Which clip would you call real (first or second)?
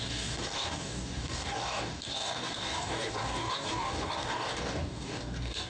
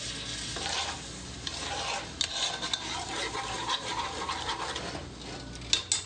second